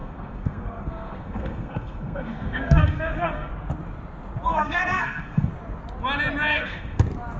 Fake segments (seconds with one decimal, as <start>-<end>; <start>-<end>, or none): 0.0-3.5; 4.5-5.5; 6.5-7.0